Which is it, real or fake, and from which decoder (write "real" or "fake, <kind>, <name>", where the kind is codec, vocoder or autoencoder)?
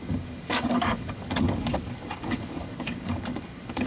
fake, codec, DAC